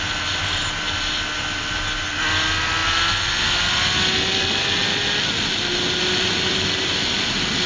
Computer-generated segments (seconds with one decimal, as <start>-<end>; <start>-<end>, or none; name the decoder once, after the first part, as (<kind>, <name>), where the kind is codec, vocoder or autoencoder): none